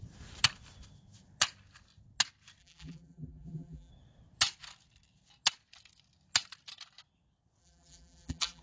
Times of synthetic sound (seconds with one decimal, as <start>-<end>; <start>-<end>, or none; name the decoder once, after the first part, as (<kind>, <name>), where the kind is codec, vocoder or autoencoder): 2.6-3.9 (vocoder, BigVGAN v2); 7.6-8.6